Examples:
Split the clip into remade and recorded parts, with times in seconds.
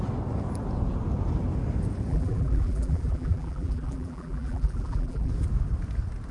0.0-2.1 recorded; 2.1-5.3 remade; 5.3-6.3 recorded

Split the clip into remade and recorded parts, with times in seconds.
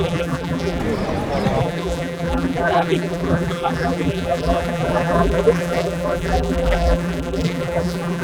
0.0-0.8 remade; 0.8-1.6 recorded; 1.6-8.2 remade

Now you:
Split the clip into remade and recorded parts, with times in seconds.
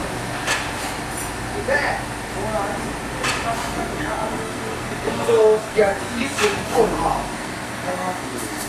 0.0-3.6 recorded; 3.6-8.7 remade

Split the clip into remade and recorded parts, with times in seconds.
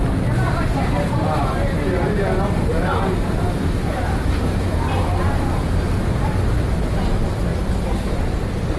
0.0-8.8 recorded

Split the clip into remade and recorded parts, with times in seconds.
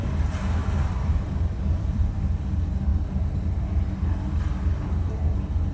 0.0-0.6 recorded; 0.6-2.4 remade; 2.4-5.7 recorded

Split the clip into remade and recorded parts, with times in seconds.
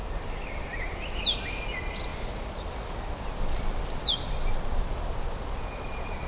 0.0-1.2 remade; 1.2-2.1 recorded; 2.1-6.3 remade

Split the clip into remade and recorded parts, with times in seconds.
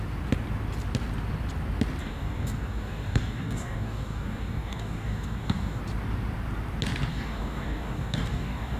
0.0-2.0 recorded; 2.0-5.8 remade; 5.8-7.1 recorded; 7.1-8.8 remade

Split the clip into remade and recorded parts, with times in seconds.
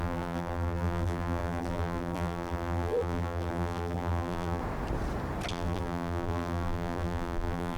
0.0-4.6 remade; 4.6-5.5 recorded; 5.5-7.8 remade